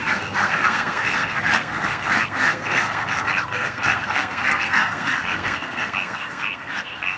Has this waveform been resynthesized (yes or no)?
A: yes